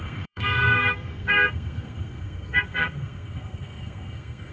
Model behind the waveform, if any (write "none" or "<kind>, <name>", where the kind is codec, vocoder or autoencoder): codec, SNAC